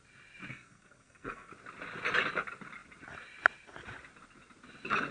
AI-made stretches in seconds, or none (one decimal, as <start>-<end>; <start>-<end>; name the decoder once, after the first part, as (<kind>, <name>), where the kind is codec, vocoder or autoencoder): 0.5-1.5 (codec, SNAC)